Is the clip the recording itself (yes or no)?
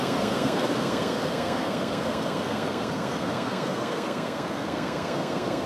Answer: no